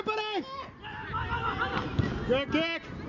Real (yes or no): yes